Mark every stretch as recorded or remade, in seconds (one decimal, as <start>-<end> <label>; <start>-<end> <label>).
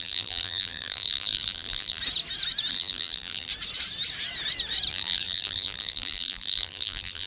0.0-2.0 remade; 2.0-2.7 recorded; 2.7-3.5 remade; 3.5-4.9 recorded; 4.9-7.3 remade